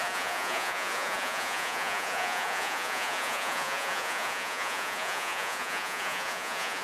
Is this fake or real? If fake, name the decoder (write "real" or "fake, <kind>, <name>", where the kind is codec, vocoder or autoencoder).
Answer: fake, vocoder, Vocos